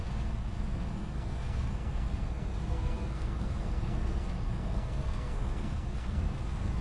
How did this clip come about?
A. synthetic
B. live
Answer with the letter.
A